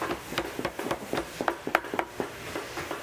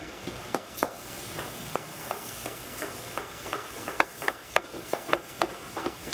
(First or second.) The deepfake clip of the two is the second